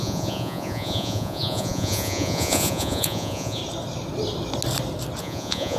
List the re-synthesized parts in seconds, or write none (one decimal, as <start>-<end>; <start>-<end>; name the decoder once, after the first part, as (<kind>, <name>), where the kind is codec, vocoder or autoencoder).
0.0-3.6 (vocoder, Vocos); 5.2-5.8